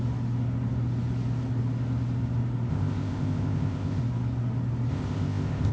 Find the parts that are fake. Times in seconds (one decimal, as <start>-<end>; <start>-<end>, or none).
2.7-4.0; 4.9-5.7

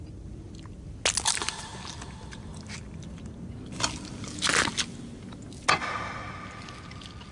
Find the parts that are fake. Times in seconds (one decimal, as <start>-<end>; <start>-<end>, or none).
none

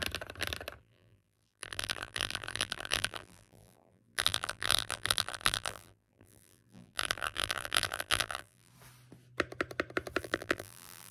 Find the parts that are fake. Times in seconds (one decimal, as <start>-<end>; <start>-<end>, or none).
0.8-8.7; 10.2-11.1

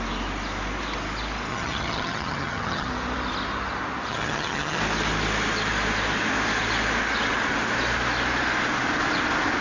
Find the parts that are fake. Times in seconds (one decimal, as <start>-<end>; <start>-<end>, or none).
1.5-2.9; 4.1-4.8

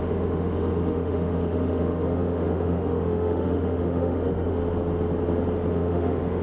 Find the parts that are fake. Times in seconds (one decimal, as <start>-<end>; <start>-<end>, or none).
0.0-4.6; 5.7-6.4

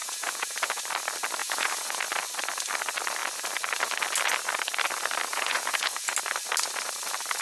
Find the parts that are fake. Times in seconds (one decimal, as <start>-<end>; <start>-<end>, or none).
0.0-0.8; 1.4-2.0; 5.3-6.1